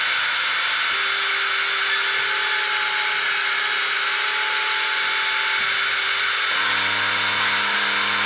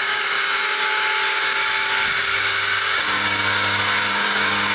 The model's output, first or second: second